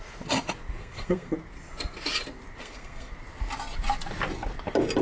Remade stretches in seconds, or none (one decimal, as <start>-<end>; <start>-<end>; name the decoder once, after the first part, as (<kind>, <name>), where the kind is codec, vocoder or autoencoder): 0.8-1.3 (codec, SNAC); 2.6-3.1